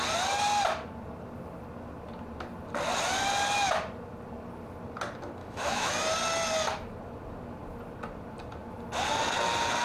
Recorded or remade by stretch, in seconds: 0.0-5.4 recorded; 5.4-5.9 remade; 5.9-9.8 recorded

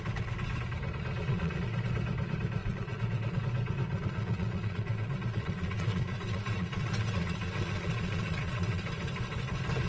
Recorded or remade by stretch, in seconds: 0.0-1.2 recorded; 1.2-1.9 remade; 1.9-2.6 recorded; 2.6-3.4 remade; 3.4-3.9 recorded; 3.9-8.9 remade; 8.9-9.9 recorded